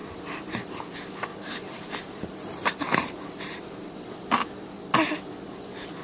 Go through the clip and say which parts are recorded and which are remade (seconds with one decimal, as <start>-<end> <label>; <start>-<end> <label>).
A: 0.0-0.8 remade; 0.8-1.3 recorded; 1.3-4.0 remade; 4.0-6.0 recorded